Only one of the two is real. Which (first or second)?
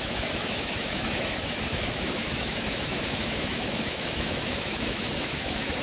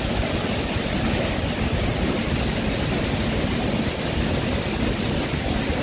second